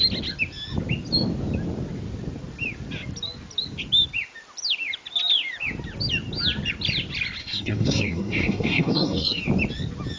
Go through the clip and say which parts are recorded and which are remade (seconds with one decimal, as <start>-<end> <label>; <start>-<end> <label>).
0.0-7.4 recorded; 7.4-9.4 remade; 9.4-10.2 recorded

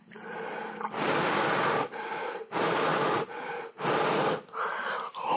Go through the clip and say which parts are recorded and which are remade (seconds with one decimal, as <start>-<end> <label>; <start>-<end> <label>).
0.0-5.4 recorded

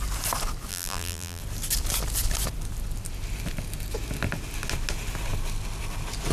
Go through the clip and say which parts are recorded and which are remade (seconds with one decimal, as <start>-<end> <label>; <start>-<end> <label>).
0.0-0.7 recorded; 0.7-1.4 remade; 1.4-6.3 recorded

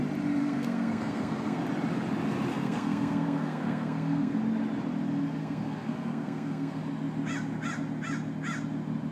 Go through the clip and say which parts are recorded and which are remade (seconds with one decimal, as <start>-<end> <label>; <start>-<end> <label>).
0.0-0.4 recorded; 0.4-1.6 remade; 1.6-2.5 recorded; 2.5-4.4 remade; 4.4-5.4 recorded; 5.4-6.8 remade; 6.8-9.1 recorded